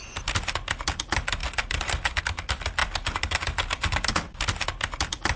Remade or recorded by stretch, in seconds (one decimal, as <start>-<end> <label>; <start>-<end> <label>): 0.0-5.4 recorded